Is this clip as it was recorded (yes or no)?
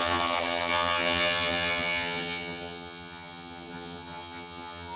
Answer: no